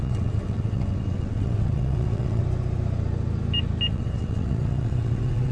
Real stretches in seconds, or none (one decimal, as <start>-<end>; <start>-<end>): 2.4-3.9